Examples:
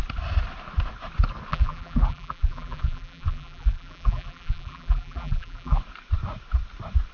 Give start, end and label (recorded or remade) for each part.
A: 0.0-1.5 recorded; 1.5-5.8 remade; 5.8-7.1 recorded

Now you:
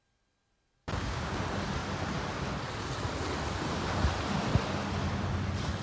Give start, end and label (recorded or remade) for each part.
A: 0.0-0.8 recorded; 0.8-1.4 remade; 1.4-5.8 recorded

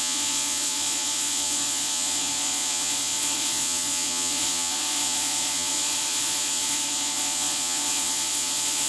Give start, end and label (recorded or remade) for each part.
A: 0.0-8.9 remade

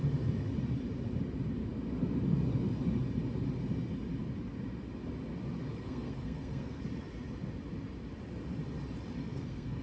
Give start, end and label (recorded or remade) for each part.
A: 0.0-5.7 recorded; 5.7-6.8 remade; 6.8-9.2 recorded; 9.2-9.8 remade

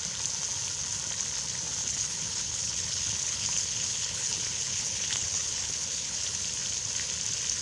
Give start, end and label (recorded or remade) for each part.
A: 0.0-1.8 recorded; 1.8-6.4 remade; 6.4-7.6 recorded